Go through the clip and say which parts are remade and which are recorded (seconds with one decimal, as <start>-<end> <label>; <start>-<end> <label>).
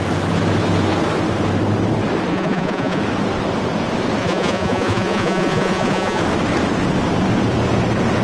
0.0-2.3 recorded; 2.3-3.0 remade; 3.0-4.2 recorded; 4.2-6.2 remade; 6.2-8.2 recorded